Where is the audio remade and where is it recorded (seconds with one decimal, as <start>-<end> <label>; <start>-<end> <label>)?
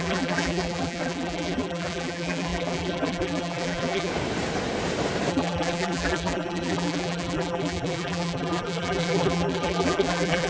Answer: 0.0-4.1 remade; 4.1-5.3 recorded; 5.3-10.5 remade